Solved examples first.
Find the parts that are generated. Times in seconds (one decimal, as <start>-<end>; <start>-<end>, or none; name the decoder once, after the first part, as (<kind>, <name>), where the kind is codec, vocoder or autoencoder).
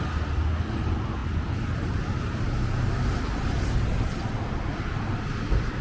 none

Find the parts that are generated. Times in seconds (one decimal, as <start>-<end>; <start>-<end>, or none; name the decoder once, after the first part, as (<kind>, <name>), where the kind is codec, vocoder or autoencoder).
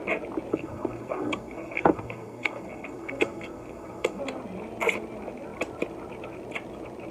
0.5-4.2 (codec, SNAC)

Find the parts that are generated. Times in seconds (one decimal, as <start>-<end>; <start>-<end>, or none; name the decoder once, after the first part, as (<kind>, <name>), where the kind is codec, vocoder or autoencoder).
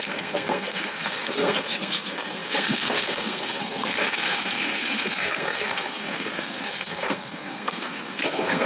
0.0-8.7 (codec, SNAC)